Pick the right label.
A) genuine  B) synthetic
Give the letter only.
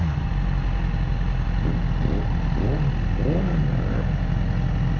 A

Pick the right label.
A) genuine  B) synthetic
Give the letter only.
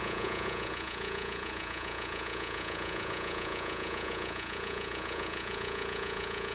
B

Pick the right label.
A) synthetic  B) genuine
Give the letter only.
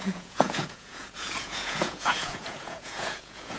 A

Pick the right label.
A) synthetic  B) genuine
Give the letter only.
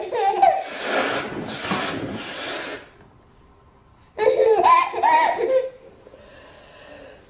B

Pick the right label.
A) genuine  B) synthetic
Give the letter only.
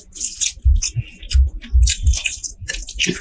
A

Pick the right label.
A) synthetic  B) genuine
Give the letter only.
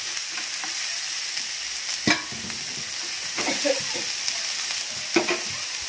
B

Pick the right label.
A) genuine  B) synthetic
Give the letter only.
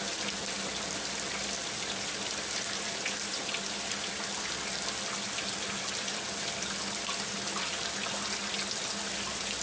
A